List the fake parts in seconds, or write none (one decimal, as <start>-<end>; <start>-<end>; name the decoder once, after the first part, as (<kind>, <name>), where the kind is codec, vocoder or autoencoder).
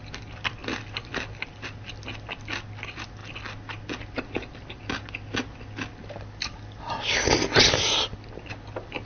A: none